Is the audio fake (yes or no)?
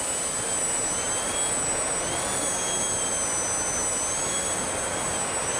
no